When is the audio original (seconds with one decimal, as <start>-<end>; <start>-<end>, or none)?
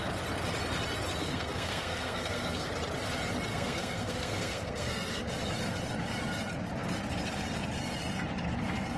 0.0-1.2; 2.7-3.5; 5.2-9.0